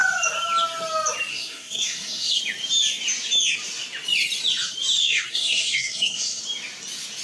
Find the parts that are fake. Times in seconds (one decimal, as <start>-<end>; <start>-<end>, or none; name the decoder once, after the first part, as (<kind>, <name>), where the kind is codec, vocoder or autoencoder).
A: 1.3-2.4 (codec, SNAC); 5.0-6.4